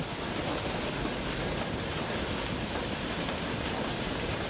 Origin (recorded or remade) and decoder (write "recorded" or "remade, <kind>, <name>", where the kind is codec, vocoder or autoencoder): recorded